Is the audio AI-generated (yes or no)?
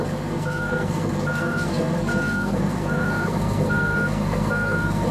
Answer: yes